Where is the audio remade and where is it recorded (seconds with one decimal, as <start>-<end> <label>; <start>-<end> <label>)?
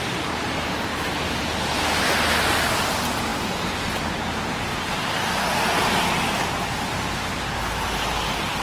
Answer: 0.0-8.6 recorded